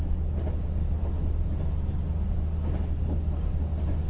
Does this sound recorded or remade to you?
recorded